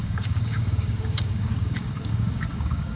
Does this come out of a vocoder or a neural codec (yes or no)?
yes